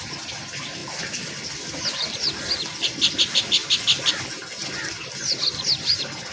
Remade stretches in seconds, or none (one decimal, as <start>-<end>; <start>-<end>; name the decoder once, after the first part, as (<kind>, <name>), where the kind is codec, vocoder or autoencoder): 0.0-0.8 (vocoder, BigVGAN v2); 1.3-6.3